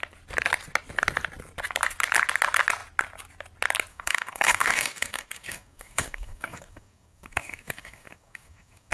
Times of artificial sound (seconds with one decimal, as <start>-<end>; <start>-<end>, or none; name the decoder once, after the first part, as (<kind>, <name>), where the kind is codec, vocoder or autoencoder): 3.9-8.9 (codec, DAC)